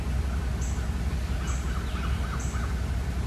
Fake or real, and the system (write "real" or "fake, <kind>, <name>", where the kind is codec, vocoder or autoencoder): real